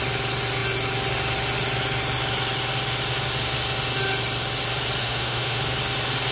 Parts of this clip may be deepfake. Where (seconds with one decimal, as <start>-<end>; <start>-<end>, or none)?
5.0-5.6